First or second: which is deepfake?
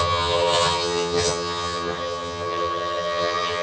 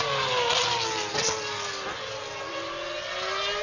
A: first